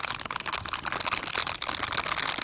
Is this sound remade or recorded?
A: recorded